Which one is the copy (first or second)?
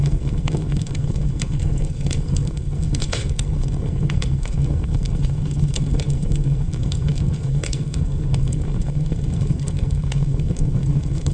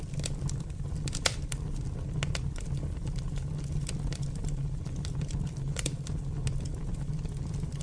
first